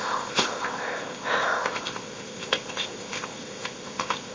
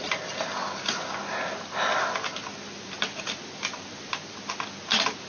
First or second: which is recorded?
second